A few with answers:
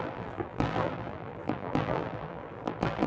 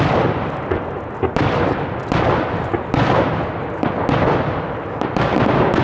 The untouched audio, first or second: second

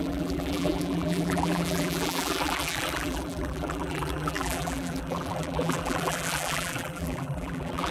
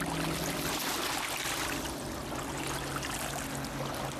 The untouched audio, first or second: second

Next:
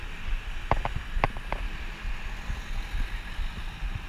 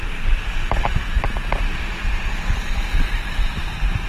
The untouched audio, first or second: first